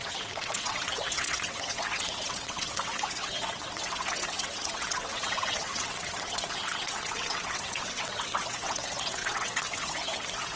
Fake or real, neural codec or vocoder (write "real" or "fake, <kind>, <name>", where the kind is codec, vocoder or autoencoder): fake, vocoder, WaveNeXt